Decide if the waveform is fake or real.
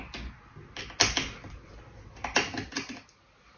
real